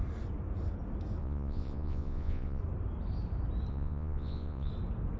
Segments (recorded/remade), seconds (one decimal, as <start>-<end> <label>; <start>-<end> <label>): 0.0-1.2 recorded; 1.2-2.6 remade; 2.6-3.7 recorded; 3.7-4.7 remade; 4.7-5.2 recorded